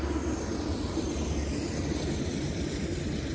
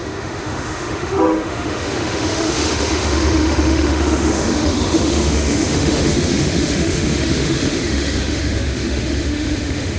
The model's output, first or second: second